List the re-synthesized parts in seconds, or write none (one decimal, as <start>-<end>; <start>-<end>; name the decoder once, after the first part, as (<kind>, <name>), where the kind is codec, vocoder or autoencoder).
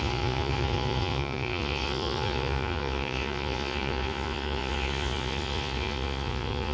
0.0-6.7 (vocoder, Vocos)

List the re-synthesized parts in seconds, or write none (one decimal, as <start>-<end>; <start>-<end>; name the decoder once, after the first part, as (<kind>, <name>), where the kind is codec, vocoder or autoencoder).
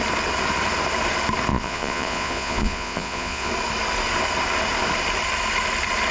1.5-3.5 (vocoder, Vocos)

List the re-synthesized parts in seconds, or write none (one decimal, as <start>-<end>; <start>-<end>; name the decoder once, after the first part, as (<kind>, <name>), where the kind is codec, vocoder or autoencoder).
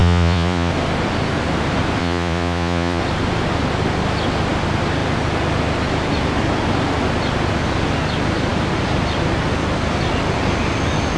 0.0-0.7 (vocoder, Vocos); 2.0-3.0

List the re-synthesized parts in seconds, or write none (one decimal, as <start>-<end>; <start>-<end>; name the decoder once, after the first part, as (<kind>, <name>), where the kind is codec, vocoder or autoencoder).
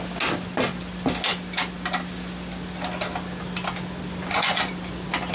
4.2-4.7 (vocoder, Vocos)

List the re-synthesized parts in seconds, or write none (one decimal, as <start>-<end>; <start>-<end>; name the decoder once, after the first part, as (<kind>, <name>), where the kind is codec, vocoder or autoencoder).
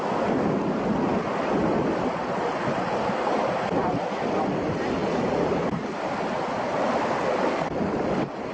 5.0-6.0 (vocoder, BigVGAN v2)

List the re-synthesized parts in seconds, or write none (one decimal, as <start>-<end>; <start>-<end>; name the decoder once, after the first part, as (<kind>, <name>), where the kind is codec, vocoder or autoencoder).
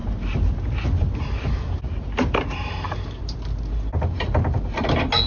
none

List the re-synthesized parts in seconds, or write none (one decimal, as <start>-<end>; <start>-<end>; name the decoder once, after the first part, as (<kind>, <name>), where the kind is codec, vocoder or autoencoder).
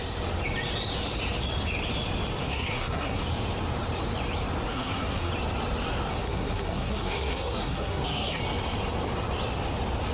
2.4-3.2 (codec, SNAC); 4.7-5.3; 6.1-8.4